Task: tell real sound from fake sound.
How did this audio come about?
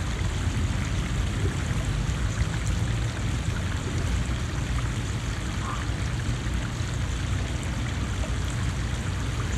real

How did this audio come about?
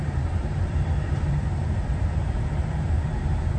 fake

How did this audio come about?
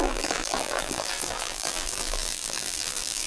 fake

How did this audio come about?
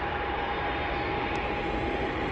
fake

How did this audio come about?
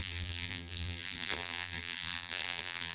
fake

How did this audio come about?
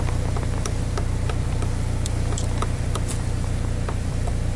fake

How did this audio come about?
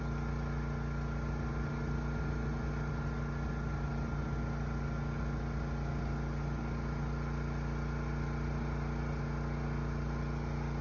real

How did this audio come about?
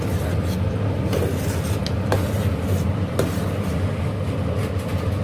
real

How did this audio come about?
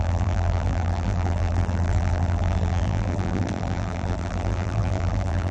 fake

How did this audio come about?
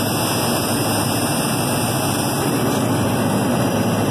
real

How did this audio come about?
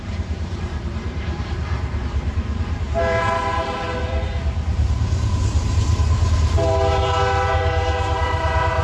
fake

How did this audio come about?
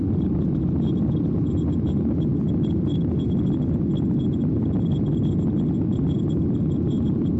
real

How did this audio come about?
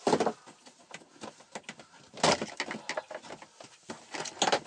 real